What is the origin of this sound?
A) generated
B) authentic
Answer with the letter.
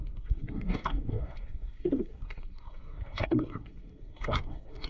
A